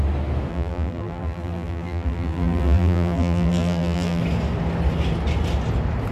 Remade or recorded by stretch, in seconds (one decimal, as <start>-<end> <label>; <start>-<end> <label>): 0.0-0.5 recorded; 0.5-4.2 remade; 4.2-6.1 recorded